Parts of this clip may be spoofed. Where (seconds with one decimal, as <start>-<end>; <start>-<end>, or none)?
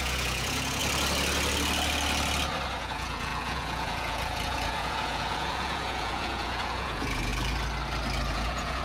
0.0-0.8; 2.8-7.3; 8.3-8.8